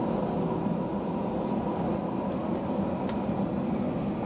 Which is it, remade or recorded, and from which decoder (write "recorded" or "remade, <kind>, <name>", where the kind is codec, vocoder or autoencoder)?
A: recorded